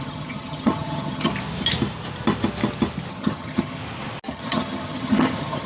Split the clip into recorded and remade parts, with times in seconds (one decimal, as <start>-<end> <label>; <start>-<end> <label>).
0.0-1.3 remade; 1.3-3.1 recorded; 3.1-3.8 remade; 3.8-4.3 recorded; 4.3-5.7 remade